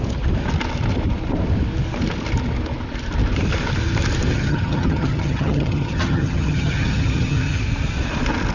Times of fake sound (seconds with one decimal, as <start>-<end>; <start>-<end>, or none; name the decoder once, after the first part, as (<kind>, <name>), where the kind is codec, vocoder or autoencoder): 4.3-7.6 (vocoder, HiFi-GAN)